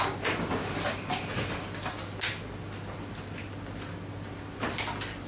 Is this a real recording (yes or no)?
yes